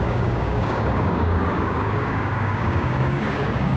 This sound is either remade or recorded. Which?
remade